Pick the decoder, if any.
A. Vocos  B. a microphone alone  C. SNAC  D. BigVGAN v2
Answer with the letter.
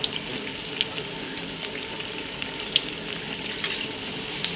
B